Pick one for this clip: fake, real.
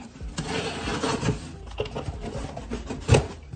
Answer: real